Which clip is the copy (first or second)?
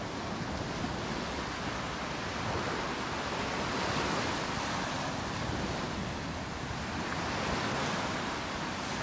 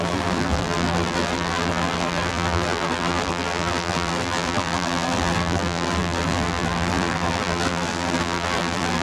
second